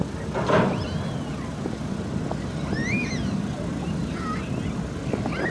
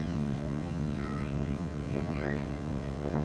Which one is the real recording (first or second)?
first